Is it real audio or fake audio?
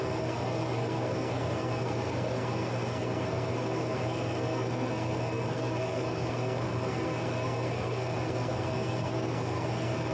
fake